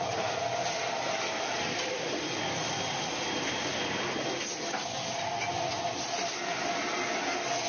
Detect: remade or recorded recorded